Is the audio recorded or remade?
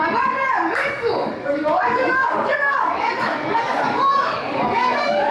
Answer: remade